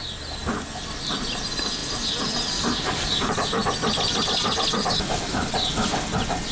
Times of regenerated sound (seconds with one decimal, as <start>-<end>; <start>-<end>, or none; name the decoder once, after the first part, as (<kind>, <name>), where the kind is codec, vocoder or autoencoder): 1.8-3.2 (vocoder, BigVGAN v2)